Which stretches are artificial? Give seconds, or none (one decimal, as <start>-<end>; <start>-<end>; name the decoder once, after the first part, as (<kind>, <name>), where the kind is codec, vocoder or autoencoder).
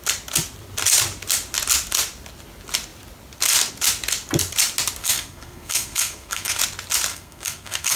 5.0-6.6 (codec, SNAC); 7.1-8.0